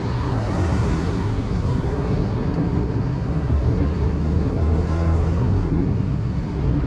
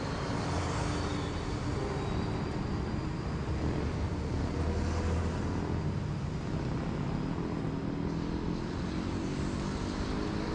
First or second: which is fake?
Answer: first